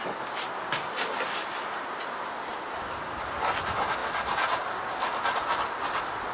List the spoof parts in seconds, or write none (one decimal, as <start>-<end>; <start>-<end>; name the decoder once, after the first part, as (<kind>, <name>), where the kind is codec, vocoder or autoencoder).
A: none